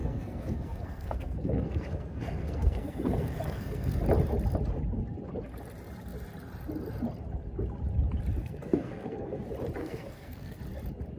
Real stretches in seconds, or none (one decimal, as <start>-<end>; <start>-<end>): 4.0-8.4; 9.4-9.8; 10.6-11.2